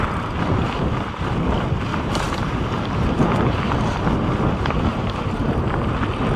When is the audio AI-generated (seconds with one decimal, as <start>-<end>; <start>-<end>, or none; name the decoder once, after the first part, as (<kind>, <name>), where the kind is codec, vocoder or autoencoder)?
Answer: 1.9-3.6 (vocoder, BigVGAN v2); 4.9-5.8